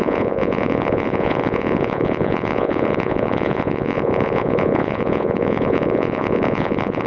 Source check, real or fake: fake